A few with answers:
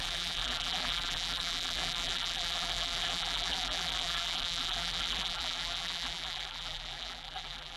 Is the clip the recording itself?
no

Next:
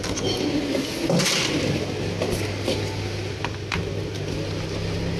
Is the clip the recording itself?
yes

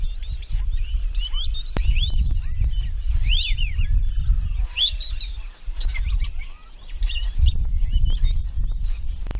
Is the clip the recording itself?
yes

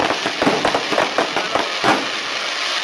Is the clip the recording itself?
yes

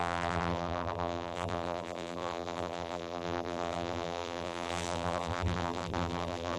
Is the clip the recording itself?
no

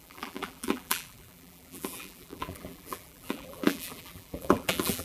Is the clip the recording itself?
no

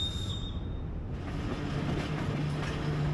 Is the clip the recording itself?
yes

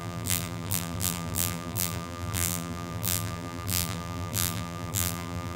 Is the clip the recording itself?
no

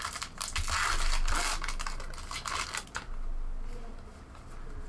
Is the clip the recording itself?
yes